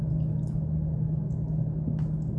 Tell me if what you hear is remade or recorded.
recorded